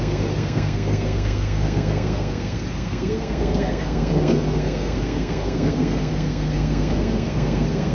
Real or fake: fake